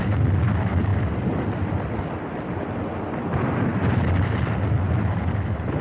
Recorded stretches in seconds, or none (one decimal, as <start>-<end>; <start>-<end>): 0.0-5.8